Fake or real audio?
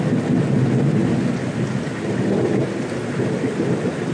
real